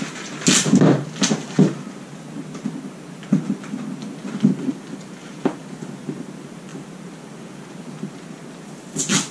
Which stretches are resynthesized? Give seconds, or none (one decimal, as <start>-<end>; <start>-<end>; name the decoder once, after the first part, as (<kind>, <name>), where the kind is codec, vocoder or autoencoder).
none